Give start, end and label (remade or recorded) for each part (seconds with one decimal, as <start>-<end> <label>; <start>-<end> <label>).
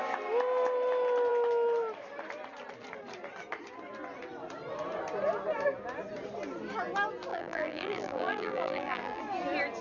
0.0-7.3 recorded; 7.3-9.2 remade; 9.2-9.8 recorded